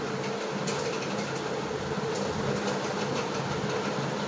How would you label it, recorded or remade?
recorded